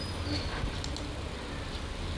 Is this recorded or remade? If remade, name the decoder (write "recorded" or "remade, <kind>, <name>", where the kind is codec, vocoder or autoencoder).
recorded